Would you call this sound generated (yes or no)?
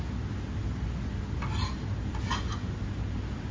no